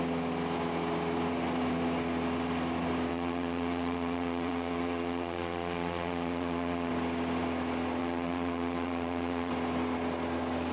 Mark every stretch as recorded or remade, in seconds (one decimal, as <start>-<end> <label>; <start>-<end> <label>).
0.0-3.1 recorded; 3.1-6.9 remade; 6.9-8.0 recorded; 8.0-9.5 remade; 9.5-10.7 recorded